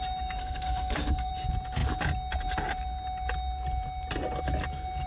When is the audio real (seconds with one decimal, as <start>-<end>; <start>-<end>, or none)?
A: 0.0-0.4; 1.3-5.1